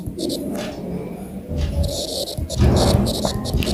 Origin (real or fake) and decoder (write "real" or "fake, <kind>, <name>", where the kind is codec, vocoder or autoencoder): real